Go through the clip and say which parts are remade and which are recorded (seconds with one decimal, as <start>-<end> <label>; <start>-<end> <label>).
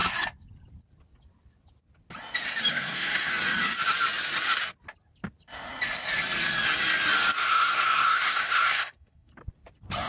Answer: 0.0-2.7 recorded; 2.7-3.3 remade; 3.3-7.4 recorded; 7.4-9.3 remade; 9.3-10.1 recorded